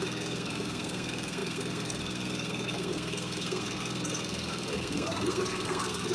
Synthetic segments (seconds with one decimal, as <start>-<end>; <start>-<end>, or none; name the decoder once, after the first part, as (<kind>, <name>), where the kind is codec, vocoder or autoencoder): 0.0-6.1 (codec, SNAC)